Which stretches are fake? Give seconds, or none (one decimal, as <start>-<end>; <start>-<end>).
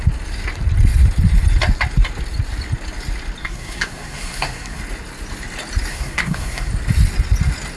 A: 3.4-4.8; 5.9-6.7